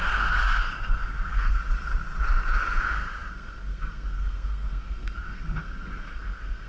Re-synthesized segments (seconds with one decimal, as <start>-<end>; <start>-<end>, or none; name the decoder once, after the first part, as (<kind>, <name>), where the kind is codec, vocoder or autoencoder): 0.0-1.6 (codec, SNAC); 2.8-6.7